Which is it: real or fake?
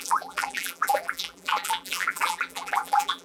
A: fake